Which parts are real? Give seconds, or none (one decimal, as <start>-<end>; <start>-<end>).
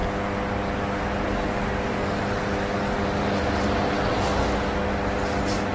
0.0-5.7